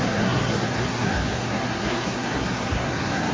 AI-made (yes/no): yes